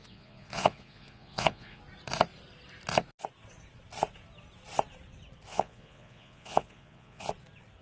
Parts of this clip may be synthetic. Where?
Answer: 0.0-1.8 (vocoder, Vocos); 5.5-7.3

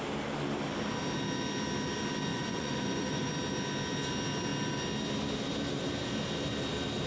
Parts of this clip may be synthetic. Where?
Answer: 2.3-3.3 (vocoder, Vocos)

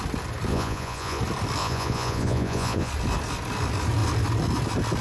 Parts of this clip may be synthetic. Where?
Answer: 0.5-1.2 (vocoder, Vocos); 1.6-2.9

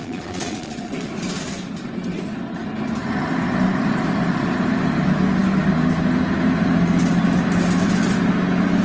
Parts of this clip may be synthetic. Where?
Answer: 0.0-1.1 (vocoder, Vocos)